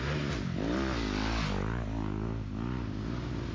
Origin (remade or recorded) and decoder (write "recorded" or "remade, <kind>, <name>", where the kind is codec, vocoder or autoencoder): recorded